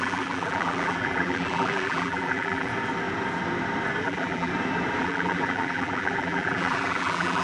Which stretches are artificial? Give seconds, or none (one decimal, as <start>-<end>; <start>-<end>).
0.0-2.7; 4.0-4.5; 5.0-7.4